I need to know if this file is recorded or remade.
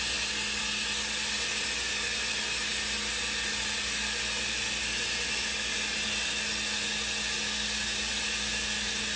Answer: recorded